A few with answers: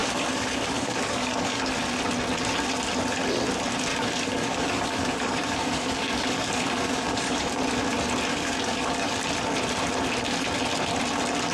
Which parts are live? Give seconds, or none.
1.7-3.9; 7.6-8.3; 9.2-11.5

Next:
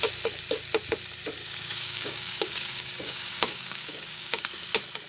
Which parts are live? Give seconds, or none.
0.0-1.4; 4.4-5.1

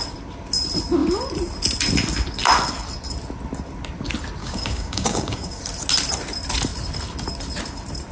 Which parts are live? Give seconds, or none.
0.0-4.4; 5.6-8.1

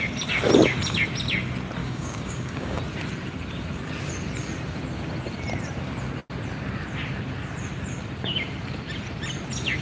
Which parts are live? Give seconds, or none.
0.0-1.8; 2.8-9.8

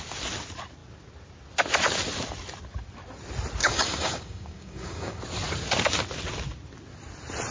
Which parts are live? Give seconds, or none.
0.0-3.6; 5.2-7.5